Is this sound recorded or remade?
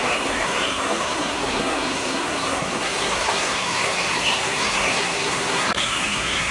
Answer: remade